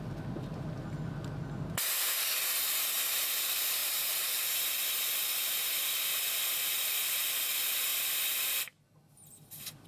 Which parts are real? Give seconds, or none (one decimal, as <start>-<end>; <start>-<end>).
0.0-9.9